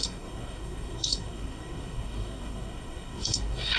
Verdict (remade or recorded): remade